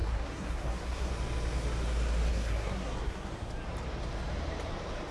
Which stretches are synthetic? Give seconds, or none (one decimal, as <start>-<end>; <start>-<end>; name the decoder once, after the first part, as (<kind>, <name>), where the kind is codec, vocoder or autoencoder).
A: 0.0-1.1 (codec, SNAC); 2.3-3.3